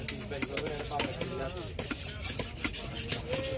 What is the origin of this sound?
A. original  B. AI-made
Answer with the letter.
A